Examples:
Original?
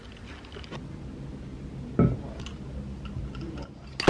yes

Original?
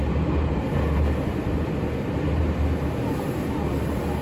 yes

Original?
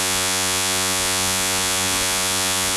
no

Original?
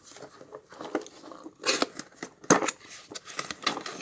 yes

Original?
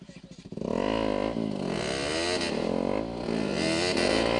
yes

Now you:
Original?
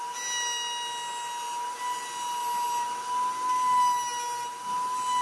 yes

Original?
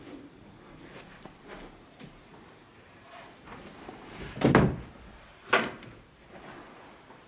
yes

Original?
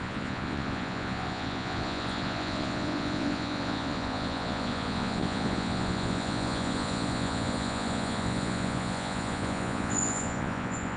no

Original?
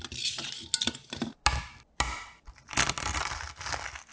yes